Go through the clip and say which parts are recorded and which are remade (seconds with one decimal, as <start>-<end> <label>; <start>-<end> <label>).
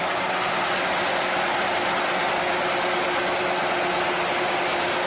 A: 0.0-5.1 recorded